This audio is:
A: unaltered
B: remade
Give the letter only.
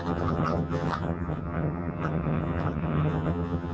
B